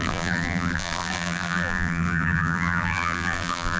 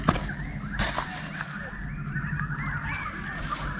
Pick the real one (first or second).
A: second